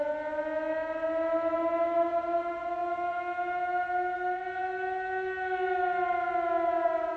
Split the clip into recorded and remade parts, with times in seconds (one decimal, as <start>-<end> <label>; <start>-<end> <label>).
0.0-7.2 recorded